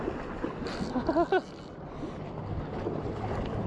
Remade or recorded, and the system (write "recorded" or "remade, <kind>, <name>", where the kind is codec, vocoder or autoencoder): recorded